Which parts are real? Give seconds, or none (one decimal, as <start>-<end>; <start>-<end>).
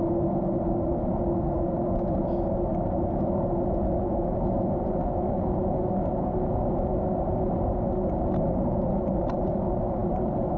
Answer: 0.0-10.0